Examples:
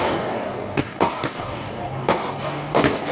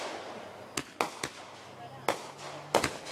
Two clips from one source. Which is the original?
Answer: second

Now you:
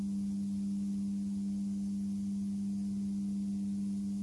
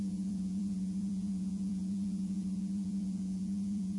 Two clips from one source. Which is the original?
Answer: first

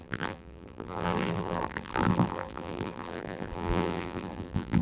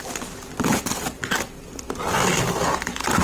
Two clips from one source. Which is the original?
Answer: second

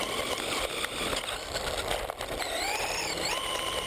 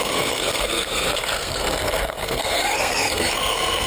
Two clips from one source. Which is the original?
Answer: first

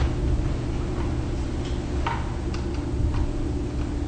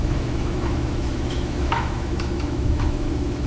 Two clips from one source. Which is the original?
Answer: first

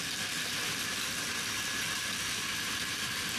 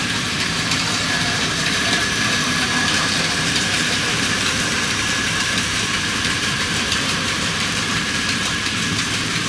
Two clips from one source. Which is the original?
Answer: first